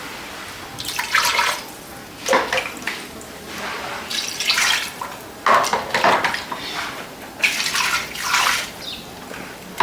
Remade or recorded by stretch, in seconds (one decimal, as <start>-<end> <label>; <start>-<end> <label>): 0.0-9.8 recorded